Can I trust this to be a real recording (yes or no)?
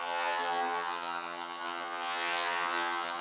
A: no